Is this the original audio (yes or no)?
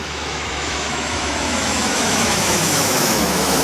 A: no